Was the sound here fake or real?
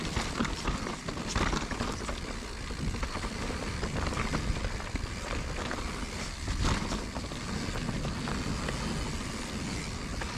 real